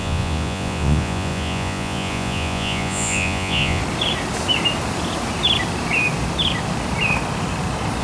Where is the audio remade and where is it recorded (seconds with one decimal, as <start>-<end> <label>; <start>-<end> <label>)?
0.0-3.8 remade; 3.8-8.0 recorded